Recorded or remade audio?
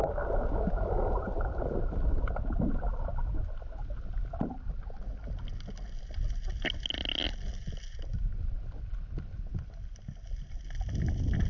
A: recorded